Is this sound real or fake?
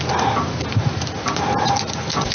real